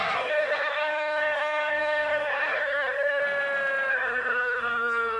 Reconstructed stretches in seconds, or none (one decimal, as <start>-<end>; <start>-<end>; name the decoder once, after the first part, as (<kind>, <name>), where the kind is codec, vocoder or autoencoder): 0.0-3.2 (codec, SNAC); 3.9-5.2